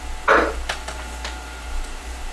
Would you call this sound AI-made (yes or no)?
no